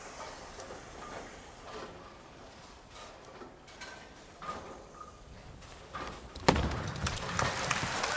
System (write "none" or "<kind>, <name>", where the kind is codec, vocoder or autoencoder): vocoder, BigVGAN v2